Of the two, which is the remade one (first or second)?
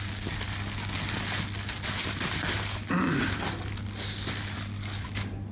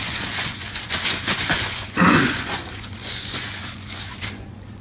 second